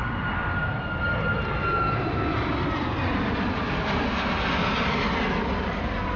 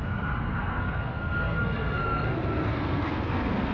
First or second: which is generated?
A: second